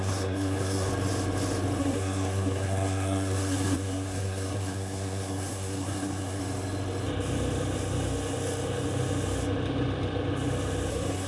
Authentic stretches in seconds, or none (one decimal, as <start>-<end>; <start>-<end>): 0.9-1.8; 6.4-10.9